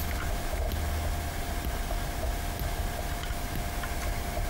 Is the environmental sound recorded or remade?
recorded